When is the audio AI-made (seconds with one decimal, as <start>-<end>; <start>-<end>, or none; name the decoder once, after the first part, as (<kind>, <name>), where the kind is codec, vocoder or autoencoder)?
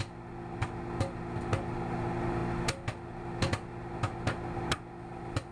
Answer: none